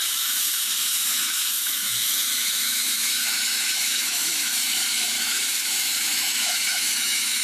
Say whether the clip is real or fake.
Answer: fake